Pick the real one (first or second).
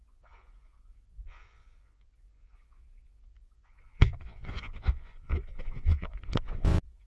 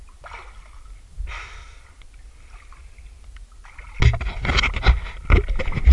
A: second